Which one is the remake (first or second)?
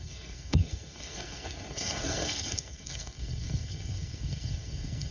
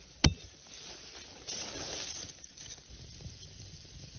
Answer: first